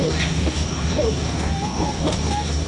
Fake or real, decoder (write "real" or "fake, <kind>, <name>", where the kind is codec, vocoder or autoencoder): fake, codec, DAC